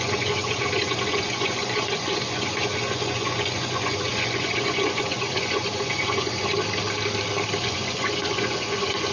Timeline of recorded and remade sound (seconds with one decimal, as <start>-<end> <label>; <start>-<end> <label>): 0.0-6.5 remade; 6.5-7.6 recorded; 7.6-9.1 remade